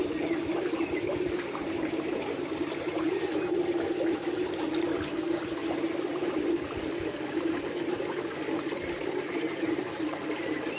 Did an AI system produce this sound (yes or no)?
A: yes